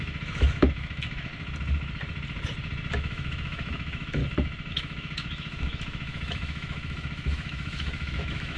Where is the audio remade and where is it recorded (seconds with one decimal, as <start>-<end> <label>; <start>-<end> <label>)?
0.0-1.3 remade; 1.3-2.9 recorded; 2.9-4.2 remade; 4.2-4.7 recorded; 4.7-8.6 remade